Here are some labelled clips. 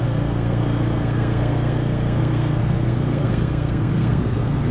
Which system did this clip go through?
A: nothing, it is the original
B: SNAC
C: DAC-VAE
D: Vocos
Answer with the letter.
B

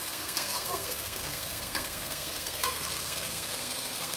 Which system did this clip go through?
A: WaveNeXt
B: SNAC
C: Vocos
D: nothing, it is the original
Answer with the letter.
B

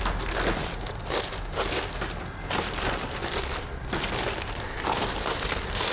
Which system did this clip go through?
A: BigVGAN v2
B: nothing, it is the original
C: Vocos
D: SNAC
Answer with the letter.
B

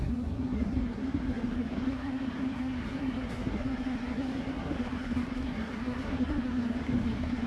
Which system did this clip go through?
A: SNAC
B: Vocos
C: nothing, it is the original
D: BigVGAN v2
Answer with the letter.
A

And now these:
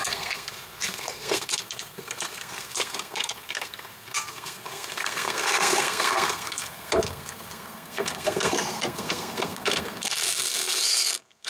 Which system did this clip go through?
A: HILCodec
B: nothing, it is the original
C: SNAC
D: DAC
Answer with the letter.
C